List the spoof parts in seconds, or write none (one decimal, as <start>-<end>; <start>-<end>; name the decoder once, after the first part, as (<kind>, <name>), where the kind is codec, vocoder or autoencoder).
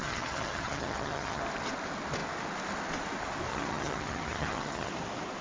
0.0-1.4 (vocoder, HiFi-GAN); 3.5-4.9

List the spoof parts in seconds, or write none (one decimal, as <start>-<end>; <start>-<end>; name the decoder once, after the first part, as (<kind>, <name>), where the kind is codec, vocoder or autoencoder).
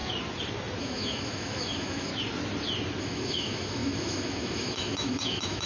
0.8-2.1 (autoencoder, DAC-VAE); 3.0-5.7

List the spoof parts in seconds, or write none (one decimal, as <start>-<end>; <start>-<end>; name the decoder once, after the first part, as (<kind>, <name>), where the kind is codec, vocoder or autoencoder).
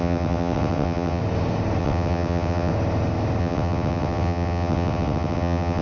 0.0-1.2 (vocoder, WaveNeXt); 1.8-2.7; 3.4-5.8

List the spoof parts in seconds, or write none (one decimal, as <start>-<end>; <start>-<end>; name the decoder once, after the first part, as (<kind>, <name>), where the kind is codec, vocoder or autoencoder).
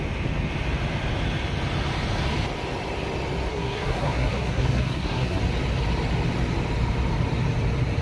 3.5-5.4 (codec, SNAC)